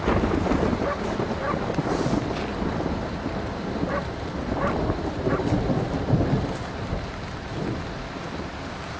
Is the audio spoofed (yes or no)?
no